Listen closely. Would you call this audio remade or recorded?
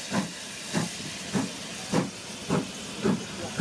recorded